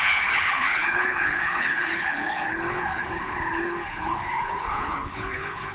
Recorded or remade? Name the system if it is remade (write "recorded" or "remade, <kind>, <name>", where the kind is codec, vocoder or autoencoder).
remade, codec, HILCodec